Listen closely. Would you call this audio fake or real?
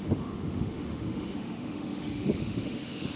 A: fake